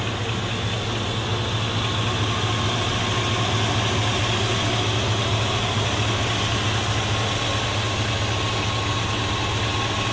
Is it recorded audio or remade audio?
recorded